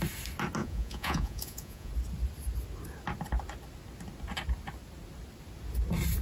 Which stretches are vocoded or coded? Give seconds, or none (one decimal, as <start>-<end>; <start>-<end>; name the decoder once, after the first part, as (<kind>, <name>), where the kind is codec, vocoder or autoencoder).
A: 0.6-1.9 (vocoder, Vocos)